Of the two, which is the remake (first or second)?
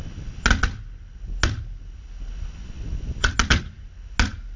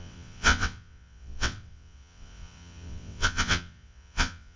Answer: second